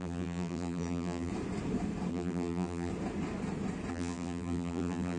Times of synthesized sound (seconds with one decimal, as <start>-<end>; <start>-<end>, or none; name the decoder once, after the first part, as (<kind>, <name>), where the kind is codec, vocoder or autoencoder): 0.0-1.3 (vocoder, BigVGAN v2); 2.1-2.9; 3.9-5.2